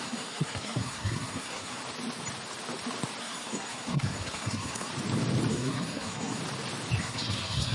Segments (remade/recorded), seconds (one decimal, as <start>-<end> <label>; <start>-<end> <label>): 0.0-1.8 remade; 1.8-3.2 recorded; 3.2-4.9 remade; 4.9-5.5 recorded; 5.5-6.4 remade; 6.4-7.0 recorded; 7.0-7.7 remade